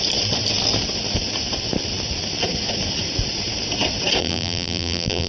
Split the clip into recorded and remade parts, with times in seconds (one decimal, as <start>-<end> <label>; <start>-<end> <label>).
0.0-4.2 recorded; 4.2-5.3 remade